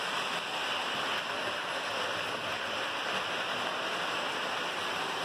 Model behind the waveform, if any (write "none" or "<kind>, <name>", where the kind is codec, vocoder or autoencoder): none